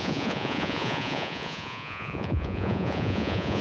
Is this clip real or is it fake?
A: fake